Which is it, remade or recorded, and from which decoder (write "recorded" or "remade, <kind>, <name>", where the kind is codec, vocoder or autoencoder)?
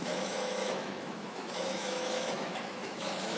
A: remade, autoencoder, DAC-VAE